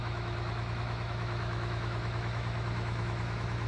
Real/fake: fake